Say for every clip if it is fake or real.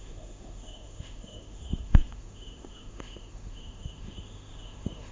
fake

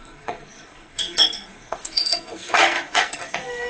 fake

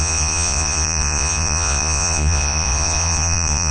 fake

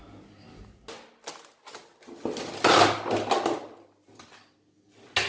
real